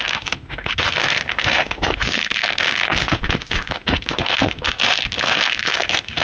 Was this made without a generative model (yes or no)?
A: no